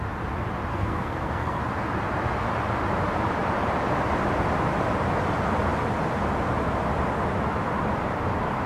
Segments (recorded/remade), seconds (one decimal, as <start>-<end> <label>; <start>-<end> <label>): 0.0-0.7 recorded; 0.7-1.6 remade; 1.6-8.7 recorded